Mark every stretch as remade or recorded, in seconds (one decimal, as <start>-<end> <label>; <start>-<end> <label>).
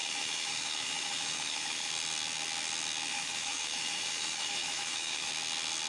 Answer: 0.0-1.9 remade; 1.9-3.1 recorded; 3.1-5.3 remade; 5.3-5.9 recorded